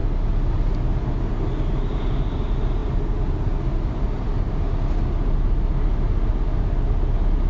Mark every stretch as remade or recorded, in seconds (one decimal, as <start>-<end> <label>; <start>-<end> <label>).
0.0-7.5 recorded